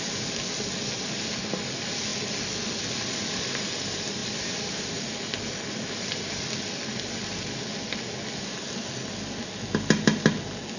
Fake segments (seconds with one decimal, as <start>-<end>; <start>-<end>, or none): none